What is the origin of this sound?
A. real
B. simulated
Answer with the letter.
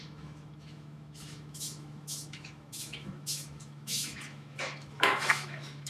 B